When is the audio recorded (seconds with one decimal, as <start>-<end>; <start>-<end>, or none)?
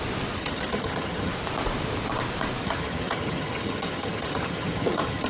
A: 0.0-0.4; 1.3-2.6